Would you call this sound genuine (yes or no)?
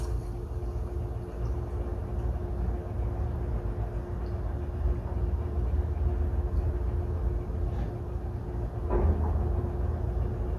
yes